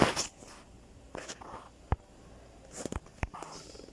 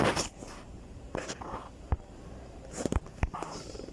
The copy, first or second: second